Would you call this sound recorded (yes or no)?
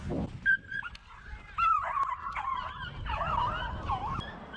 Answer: yes